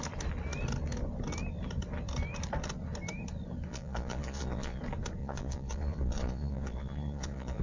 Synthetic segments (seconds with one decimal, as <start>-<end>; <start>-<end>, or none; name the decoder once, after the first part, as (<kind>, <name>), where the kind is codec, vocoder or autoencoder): 3.7-4.8 (vocoder, Vocos); 5.2-7.6